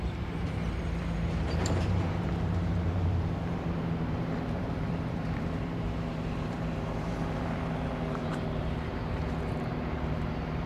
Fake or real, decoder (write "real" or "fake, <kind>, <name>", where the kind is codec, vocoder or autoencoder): fake, vocoder, BigVGAN v2